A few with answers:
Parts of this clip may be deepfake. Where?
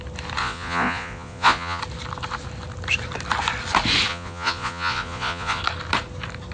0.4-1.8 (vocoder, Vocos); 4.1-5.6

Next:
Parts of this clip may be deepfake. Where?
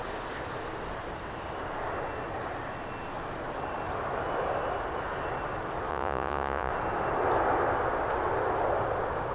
5.9-6.7 (vocoder, Vocos)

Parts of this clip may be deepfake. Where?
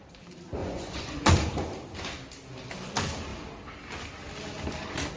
0.6-1.3 (vocoder, Vocos)